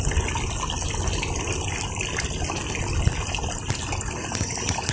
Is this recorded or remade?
recorded